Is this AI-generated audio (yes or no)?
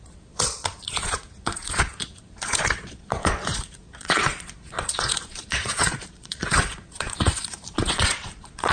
yes